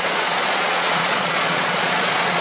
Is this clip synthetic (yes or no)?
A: yes